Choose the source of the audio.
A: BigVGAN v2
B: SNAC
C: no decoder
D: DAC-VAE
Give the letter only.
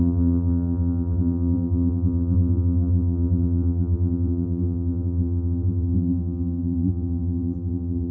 A